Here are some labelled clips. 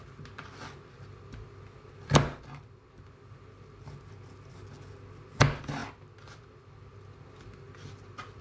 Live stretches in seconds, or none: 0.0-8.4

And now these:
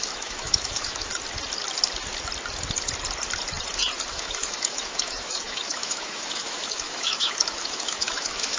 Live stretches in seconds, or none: 1.1-4.1